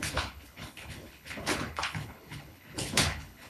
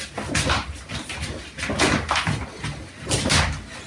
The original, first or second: second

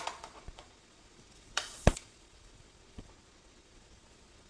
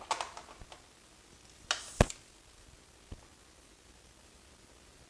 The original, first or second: second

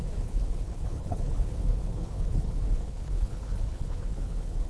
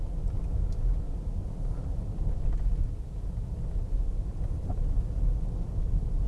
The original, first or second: second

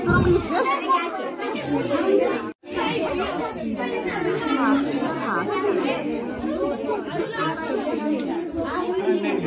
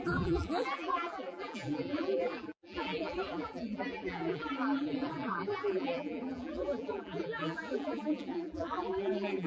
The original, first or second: first